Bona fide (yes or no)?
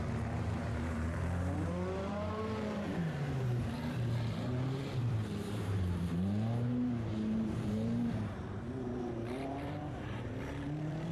no